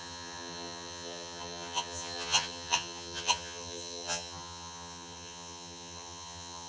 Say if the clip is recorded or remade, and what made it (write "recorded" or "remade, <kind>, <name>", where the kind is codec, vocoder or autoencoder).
remade, vocoder, HiFi-GAN